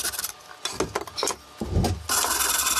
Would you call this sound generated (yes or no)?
no